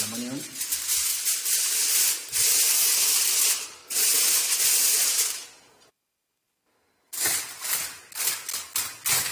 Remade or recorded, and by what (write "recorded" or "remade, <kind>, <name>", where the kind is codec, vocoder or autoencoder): recorded